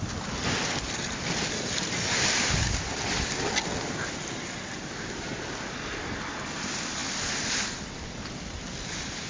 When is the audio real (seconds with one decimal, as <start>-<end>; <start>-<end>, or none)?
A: 0.0-9.3